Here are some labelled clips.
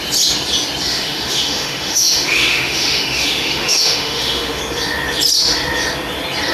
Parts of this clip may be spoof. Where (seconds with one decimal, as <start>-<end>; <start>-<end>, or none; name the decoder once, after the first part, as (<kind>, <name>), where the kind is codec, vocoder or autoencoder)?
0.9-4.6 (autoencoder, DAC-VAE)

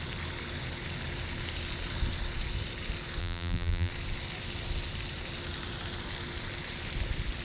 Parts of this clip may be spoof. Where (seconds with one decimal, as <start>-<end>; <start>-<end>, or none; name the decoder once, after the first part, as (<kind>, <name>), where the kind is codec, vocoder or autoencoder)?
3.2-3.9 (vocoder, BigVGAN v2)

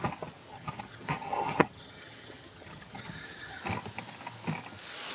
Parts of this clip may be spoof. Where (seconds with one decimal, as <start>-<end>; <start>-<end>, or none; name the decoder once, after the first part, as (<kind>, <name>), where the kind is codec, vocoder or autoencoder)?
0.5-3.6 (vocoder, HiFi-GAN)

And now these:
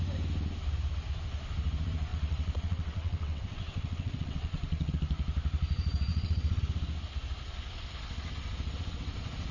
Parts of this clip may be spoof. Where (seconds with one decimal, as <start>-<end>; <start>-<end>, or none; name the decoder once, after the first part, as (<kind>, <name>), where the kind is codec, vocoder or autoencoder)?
2.1-4.9 (vocoder, WaveNeXt); 6.1-6.6